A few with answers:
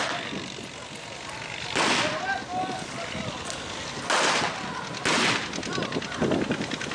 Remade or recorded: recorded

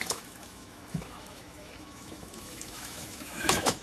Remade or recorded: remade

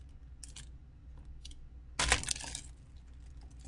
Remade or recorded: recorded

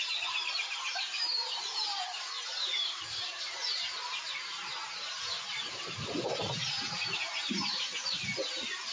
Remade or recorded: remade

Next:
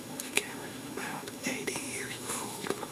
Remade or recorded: remade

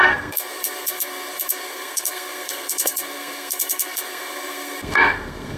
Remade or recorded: remade